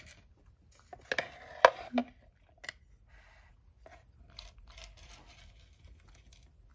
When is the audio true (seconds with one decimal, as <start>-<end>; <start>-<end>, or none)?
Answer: 0.0-6.7